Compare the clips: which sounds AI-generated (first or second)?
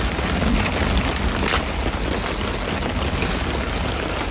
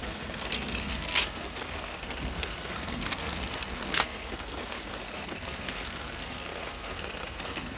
second